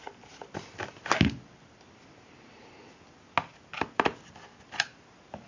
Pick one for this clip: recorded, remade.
recorded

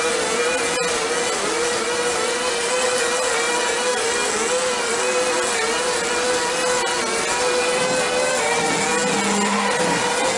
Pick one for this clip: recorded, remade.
recorded